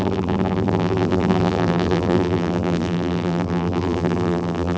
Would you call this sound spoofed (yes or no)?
yes